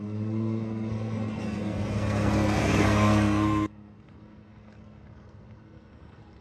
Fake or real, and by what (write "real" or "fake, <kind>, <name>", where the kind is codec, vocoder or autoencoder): fake, codec, SNAC